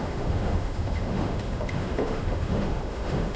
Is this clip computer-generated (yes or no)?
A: yes